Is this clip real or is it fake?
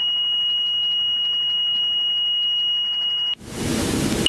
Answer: real